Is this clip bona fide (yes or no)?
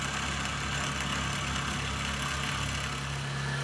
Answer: yes